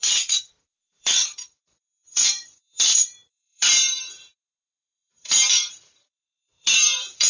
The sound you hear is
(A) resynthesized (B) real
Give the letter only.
A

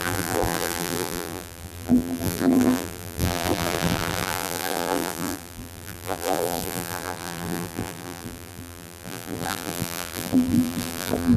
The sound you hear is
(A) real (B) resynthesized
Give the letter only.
B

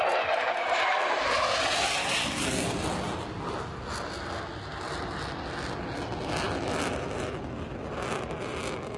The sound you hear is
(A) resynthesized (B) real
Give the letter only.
B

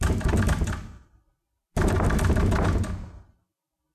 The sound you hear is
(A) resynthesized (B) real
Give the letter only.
B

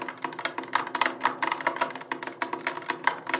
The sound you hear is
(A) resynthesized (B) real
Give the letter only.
B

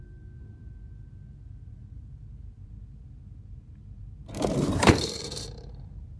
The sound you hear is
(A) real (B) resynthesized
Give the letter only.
B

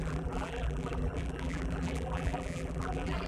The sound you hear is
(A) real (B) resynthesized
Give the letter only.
B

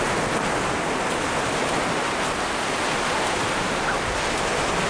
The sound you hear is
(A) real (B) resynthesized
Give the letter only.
A